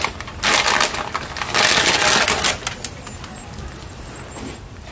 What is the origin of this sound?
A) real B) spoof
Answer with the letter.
A